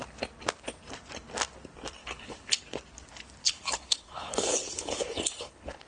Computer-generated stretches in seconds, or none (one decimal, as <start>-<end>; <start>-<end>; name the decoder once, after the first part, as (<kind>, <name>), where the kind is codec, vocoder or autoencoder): 2.0-2.6 (codec, HILCodec); 3.4-5.9